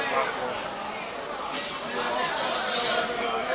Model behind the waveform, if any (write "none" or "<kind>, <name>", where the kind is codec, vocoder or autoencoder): none